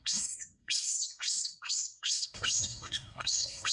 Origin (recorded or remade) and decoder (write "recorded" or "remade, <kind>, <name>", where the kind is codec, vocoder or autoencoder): remade, codec, SNAC